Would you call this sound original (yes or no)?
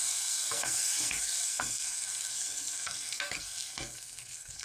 no